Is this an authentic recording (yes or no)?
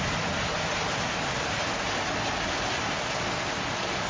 yes